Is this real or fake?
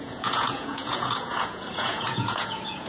fake